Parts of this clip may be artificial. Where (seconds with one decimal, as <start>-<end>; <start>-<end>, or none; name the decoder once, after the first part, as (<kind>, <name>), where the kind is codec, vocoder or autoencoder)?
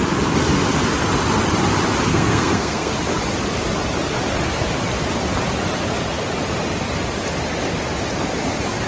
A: 2.1-2.9 (codec, SNAC)